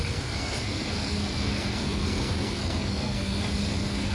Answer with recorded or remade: remade